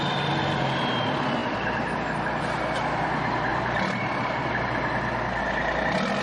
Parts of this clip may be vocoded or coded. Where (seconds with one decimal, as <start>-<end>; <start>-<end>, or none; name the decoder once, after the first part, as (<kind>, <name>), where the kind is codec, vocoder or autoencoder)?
3.5-4.5 (vocoder, BigVGAN v2)